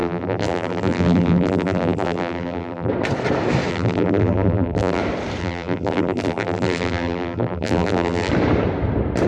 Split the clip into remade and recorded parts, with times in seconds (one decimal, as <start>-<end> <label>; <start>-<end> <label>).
0.0-2.9 remade; 2.9-3.7 recorded; 3.7-5.0 remade; 5.0-5.4 recorded; 5.4-8.3 remade; 8.3-9.3 recorded